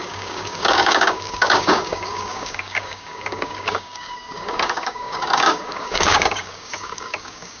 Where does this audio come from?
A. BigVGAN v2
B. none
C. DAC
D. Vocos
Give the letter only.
C